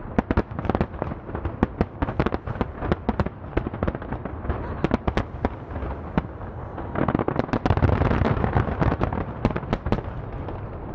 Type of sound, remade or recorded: recorded